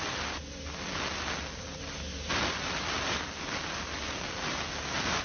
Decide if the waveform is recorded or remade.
recorded